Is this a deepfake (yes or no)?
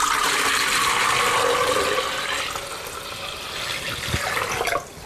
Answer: no